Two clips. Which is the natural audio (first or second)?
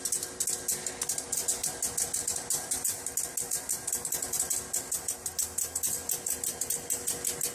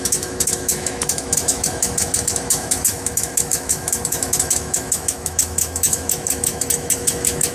first